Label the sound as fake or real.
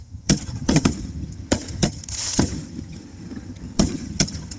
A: fake